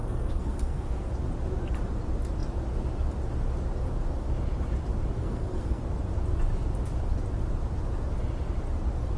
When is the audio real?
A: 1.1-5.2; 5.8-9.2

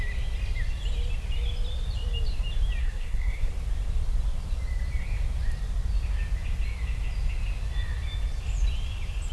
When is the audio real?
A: 0.0-2.8; 3.5-9.3

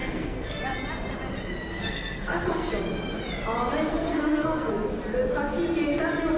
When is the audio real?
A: 0.6-1.7; 2.7-3.9; 4.7-6.4

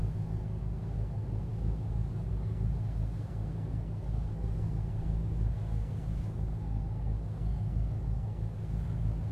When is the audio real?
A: none